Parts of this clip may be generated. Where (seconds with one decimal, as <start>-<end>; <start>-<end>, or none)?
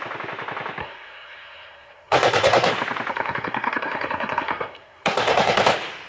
0.8-2.7; 3.1-5.6